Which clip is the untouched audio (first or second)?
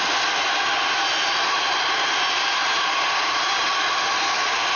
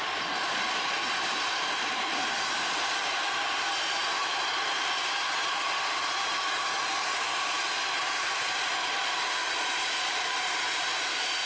first